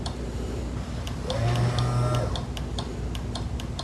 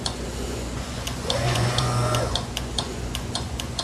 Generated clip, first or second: second